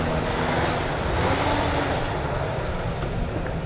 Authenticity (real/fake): real